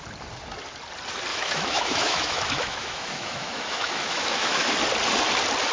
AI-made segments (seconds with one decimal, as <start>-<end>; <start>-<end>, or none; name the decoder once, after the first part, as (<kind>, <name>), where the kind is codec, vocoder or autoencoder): 1.3-4.7 (autoencoder, DAC-VAE)